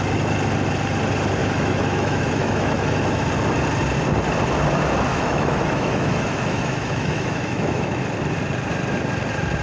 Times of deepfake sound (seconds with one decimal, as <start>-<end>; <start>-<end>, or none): 1.4-3.3; 5.1-8.0